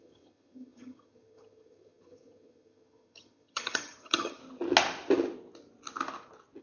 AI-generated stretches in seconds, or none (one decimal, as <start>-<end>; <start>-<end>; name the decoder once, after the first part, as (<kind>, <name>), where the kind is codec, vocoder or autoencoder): 0.0-4.4 (vocoder, HiFi-GAN)